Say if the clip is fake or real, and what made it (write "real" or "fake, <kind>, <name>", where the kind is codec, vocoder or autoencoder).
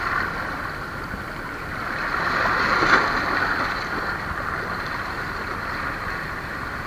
real